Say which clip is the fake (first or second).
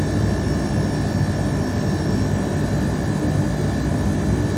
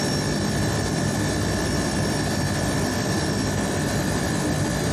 second